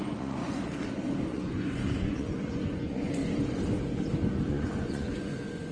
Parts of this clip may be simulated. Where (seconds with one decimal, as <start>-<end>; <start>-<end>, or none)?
0.0-0.4; 1.3-3.2; 4.5-5.7